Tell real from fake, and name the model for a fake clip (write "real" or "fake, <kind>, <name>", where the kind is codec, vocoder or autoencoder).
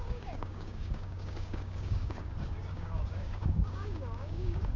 fake, codec, DAC